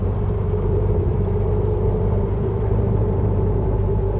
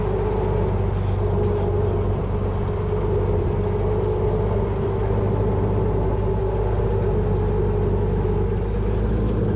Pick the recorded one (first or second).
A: second